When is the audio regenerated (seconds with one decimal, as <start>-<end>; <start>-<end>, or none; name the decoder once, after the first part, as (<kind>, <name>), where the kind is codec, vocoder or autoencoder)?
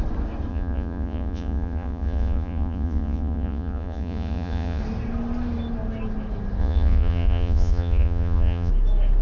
0.5-4.8 (vocoder, Vocos); 6.6-8.7